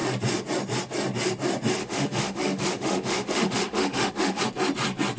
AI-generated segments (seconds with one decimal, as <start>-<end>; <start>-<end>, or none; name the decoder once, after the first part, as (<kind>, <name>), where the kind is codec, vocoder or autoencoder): 1.8-4.4 (autoencoder, DAC-VAE)

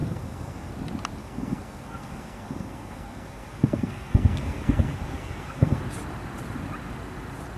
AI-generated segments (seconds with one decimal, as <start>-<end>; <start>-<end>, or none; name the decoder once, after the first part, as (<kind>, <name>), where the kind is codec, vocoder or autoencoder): 0.0-0.7 (codec, SNAC); 1.2-5.8